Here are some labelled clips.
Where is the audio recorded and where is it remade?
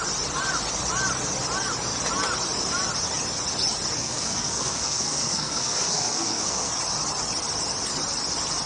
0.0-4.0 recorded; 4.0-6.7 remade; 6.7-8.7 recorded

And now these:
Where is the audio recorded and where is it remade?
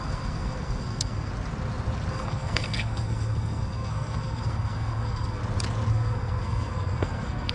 0.0-1.3 remade; 1.3-2.1 recorded; 2.1-5.4 remade; 5.4-5.9 recorded; 5.9-7.5 remade